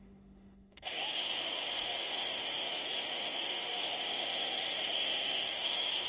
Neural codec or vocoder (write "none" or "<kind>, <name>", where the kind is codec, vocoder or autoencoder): autoencoder, DAC-VAE